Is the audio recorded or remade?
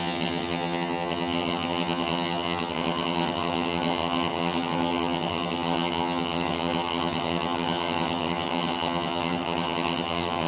remade